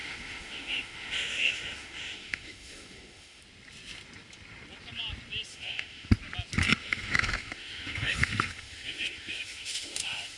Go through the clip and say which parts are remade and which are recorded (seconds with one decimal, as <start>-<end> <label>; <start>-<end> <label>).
0.0-3.4 remade; 3.4-5.5 recorded; 5.5-6.1 remade; 6.1-6.8 recorded; 6.8-10.4 remade